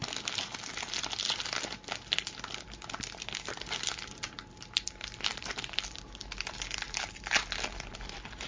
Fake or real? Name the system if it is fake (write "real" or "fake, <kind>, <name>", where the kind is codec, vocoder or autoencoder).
real